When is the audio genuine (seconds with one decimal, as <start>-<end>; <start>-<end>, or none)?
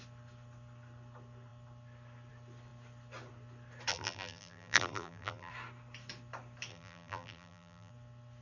0.0-3.9; 5.5-6.7; 7.9-8.4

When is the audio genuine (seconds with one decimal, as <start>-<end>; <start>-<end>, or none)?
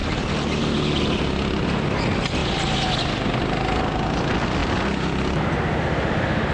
0.6-6.5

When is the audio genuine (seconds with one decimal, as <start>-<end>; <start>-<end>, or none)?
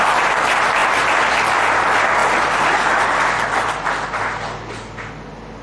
0.0-5.6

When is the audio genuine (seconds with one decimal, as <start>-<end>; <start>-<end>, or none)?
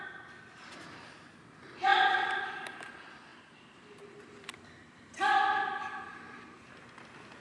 0.0-1.9; 2.7-3.3; 6.7-7.4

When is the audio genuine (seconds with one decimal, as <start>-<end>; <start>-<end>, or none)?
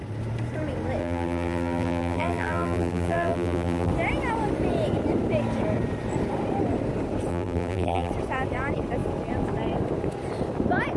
0.0-1.0; 3.9-7.3; 8.1-11.0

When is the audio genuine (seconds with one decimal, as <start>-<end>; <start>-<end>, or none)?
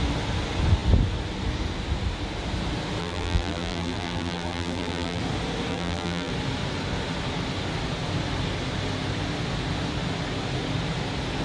0.0-3.0; 5.2-5.7; 6.3-11.4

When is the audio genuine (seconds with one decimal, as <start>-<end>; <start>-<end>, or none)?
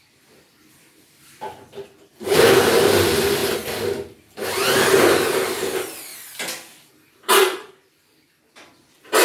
6.1-6.9